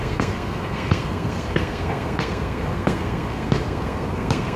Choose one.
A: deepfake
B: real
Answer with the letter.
A